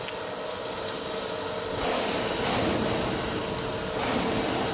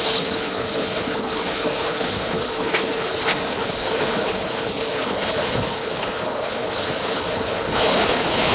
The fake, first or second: second